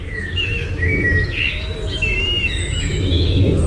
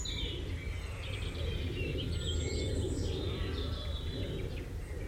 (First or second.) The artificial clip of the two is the first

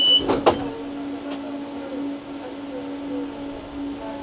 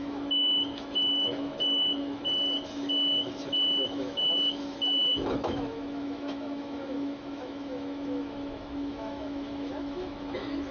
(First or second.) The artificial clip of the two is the second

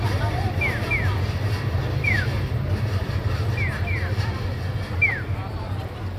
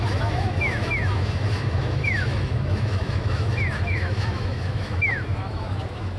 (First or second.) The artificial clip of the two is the second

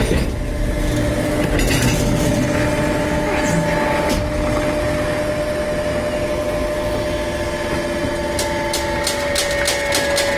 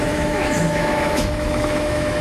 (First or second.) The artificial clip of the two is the second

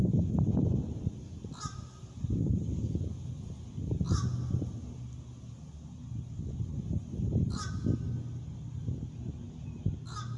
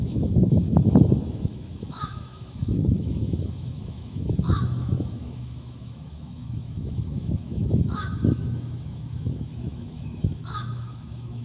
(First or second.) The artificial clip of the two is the second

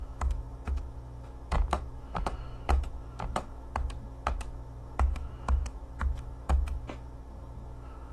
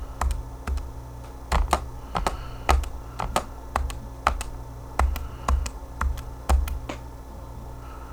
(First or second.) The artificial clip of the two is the first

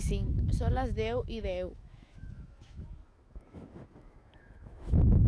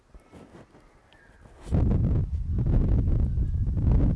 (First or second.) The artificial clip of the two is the first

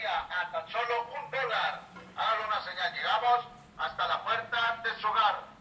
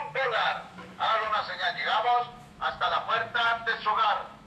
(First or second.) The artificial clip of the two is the second